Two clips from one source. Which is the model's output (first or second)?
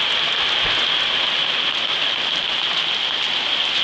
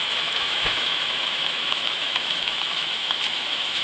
second